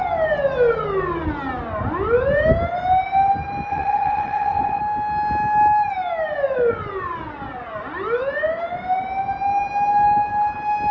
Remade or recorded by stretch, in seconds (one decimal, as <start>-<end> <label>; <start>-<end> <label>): 0.0-3.7 recorded; 3.7-4.8 remade; 4.8-10.9 recorded